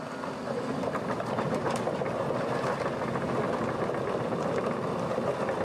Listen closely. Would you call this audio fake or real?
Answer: real